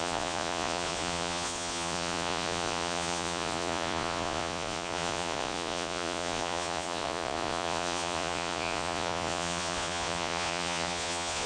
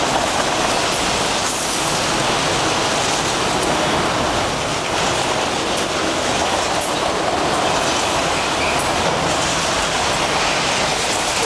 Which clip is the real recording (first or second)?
second